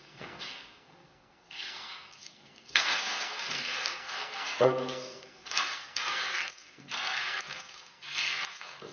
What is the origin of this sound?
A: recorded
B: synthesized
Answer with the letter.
B